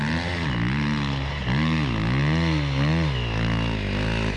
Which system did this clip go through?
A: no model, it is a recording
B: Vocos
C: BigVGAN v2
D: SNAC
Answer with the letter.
A